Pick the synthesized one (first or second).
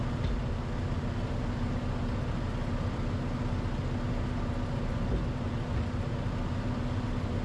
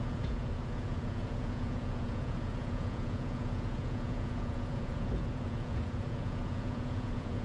second